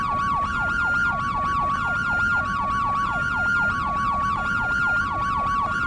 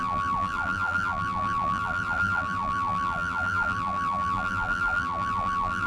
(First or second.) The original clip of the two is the first